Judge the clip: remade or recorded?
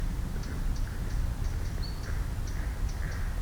recorded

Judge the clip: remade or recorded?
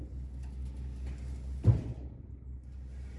recorded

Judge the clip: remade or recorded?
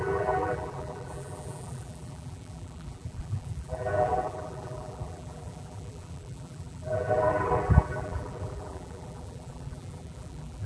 remade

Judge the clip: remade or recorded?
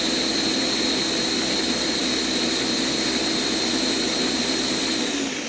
recorded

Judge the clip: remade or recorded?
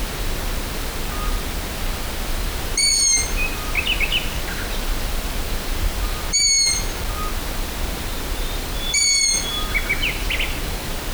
recorded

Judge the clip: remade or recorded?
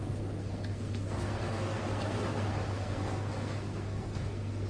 remade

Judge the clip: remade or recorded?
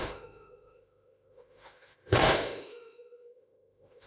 remade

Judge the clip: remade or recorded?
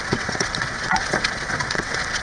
remade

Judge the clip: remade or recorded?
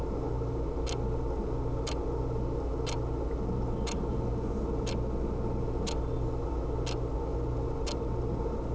recorded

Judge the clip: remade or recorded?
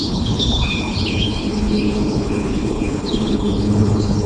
remade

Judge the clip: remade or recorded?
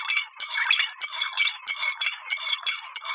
recorded